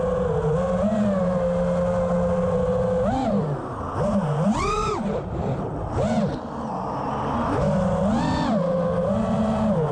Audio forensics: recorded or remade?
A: recorded